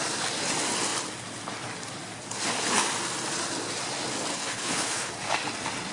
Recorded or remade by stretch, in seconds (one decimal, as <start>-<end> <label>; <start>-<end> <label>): 0.0-4.3 recorded; 4.3-5.1 remade; 5.1-5.9 recorded